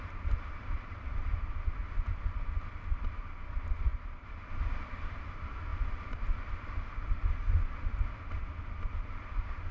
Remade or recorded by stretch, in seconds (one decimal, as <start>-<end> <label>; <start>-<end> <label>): 0.0-1.8 remade; 1.8-3.5 recorded; 3.5-5.7 remade; 5.7-9.0 recorded; 9.0-9.7 remade